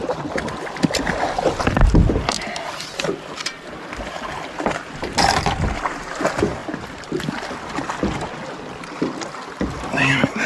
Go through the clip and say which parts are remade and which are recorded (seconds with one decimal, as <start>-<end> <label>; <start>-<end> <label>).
0.0-10.5 recorded